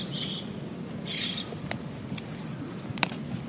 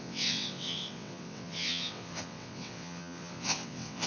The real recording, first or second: first